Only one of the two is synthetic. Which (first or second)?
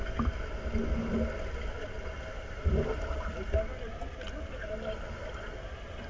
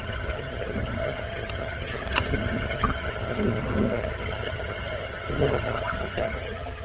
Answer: second